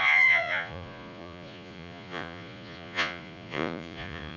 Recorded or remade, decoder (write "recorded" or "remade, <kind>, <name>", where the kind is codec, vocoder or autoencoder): remade, vocoder, Vocos